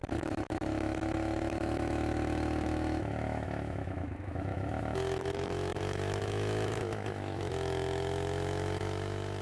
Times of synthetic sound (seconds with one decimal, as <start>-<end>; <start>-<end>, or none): 0.0-9.4